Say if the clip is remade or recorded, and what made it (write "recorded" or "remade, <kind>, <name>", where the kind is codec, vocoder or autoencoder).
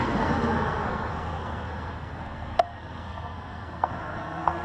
remade, codec, SNAC